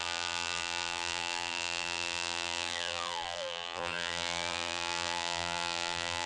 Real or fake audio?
fake